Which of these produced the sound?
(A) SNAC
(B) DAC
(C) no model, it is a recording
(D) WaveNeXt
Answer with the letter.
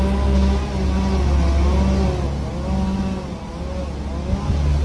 C